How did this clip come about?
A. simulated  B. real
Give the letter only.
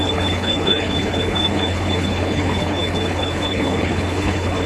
A